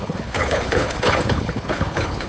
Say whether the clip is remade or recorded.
remade